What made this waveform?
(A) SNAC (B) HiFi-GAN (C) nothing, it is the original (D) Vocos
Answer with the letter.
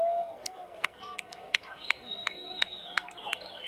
A